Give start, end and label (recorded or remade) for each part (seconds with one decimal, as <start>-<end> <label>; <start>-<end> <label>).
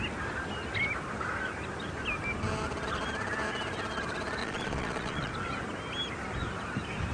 0.0-4.4 recorded; 4.4-5.3 remade; 5.3-7.1 recorded